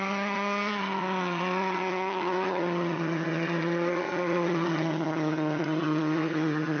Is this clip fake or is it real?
fake